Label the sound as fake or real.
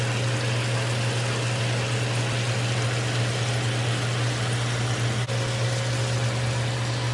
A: real